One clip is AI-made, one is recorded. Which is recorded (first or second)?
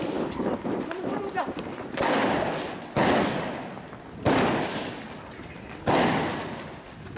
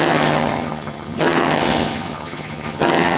first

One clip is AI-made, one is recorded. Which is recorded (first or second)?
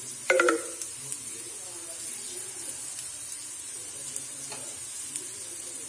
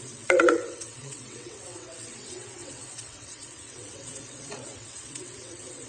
first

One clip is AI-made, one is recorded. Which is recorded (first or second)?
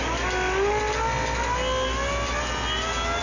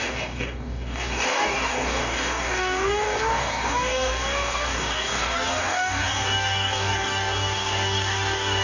first